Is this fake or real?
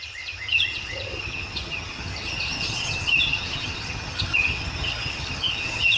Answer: fake